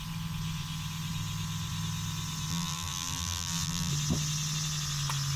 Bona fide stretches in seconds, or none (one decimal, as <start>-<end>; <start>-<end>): 0.0-2.5; 3.9-5.4